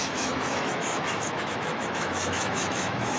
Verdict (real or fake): fake